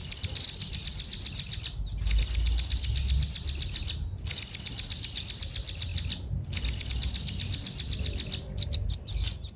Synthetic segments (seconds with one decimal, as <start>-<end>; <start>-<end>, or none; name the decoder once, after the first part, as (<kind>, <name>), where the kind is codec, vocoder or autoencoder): none